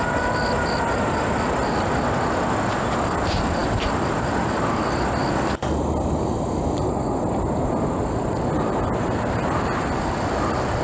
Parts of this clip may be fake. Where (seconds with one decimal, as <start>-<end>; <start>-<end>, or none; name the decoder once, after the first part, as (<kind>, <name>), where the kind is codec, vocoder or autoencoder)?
none